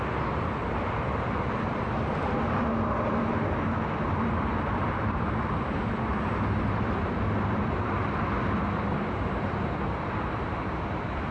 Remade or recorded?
remade